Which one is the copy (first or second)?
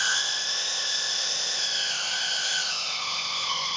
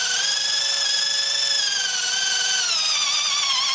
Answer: first